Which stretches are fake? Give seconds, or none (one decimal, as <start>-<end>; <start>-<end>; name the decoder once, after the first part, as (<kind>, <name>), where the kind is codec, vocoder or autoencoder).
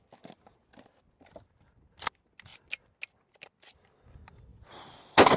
4.5-5.4 (vocoder, BigVGAN v2)